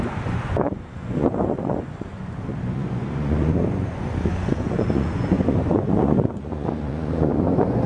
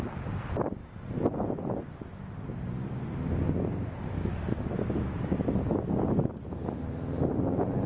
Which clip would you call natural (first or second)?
second